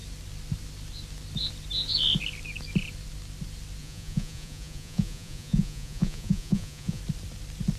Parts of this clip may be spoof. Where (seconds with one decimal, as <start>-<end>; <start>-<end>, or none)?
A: 3.8-7.0